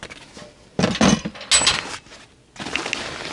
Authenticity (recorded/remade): recorded